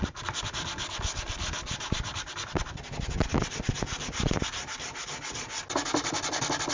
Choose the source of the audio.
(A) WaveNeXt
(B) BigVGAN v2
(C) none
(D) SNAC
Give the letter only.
C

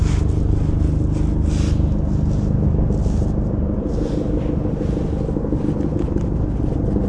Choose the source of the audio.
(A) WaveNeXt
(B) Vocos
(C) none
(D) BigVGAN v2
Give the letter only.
C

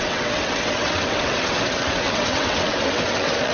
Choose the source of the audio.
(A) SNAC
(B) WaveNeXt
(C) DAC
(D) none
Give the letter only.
B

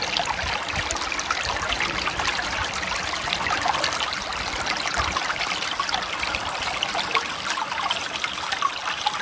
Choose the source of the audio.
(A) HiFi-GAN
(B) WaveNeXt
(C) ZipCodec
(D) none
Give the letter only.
D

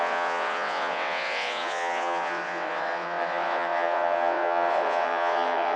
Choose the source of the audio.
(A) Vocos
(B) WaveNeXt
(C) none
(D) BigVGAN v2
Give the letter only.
B